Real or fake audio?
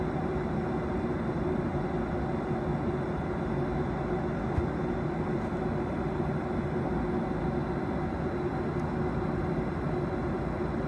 real